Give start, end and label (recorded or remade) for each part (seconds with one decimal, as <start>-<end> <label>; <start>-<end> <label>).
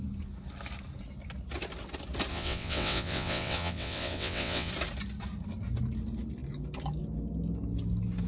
0.0-2.3 recorded; 2.3-4.7 remade; 4.7-8.3 recorded